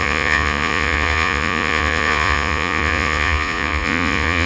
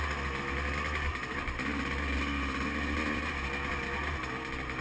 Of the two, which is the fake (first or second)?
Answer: first